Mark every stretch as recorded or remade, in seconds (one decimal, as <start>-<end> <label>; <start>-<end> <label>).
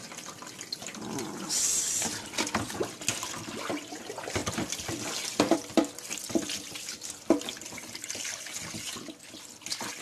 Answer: 0.0-10.0 recorded